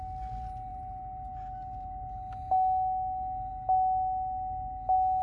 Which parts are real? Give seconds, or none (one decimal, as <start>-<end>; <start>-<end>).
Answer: 0.0-5.2